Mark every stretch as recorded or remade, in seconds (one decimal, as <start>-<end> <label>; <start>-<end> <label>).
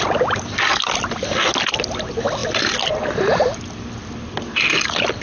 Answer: 0.0-5.2 recorded